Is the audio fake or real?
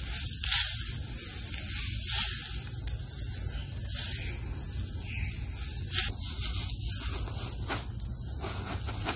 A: real